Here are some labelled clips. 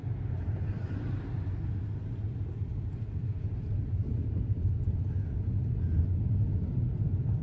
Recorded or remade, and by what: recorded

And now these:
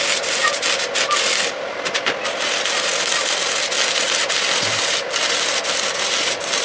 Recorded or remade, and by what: recorded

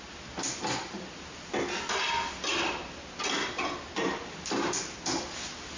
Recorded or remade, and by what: recorded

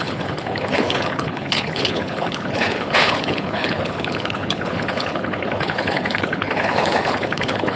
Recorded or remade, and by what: remade, codec, HILCodec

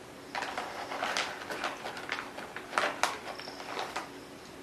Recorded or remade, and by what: recorded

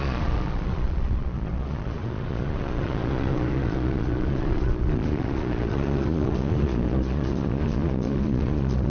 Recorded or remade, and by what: remade, vocoder, Vocos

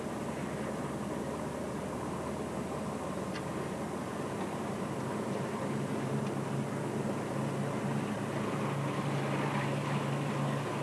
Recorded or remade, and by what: recorded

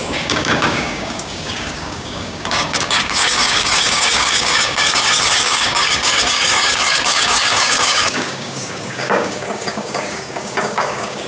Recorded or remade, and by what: remade, codec, DAC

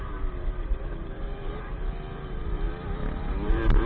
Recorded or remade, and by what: remade, vocoder, BigVGAN v2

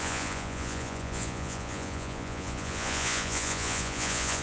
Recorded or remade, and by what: remade, vocoder, Vocos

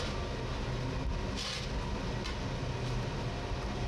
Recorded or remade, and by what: recorded